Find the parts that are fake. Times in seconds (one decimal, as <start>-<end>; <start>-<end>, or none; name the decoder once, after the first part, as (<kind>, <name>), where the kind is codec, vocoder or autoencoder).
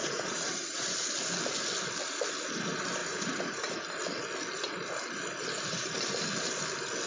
0.0-0.8 (vocoder, Vocos); 3.0-3.8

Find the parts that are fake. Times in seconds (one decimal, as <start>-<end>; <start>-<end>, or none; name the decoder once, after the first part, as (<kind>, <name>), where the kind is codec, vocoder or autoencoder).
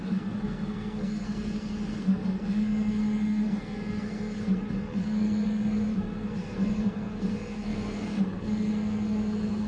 0.0-9.7 (codec, SNAC)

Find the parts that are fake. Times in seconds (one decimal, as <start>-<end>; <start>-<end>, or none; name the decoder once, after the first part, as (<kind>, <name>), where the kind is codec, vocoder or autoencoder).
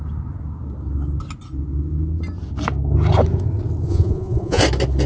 3.9-4.6 (vocoder, Vocos)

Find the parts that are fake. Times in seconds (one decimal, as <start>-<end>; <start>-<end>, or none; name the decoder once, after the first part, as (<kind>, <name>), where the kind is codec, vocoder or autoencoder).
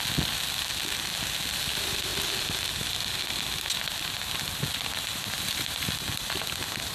none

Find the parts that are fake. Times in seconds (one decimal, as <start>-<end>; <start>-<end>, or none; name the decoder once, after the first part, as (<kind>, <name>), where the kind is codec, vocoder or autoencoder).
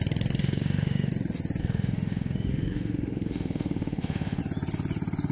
0.4-1.1 (autoencoder, DAC-VAE); 1.6-4.4